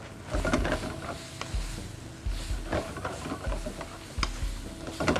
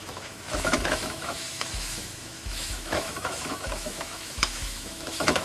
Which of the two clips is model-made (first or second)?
second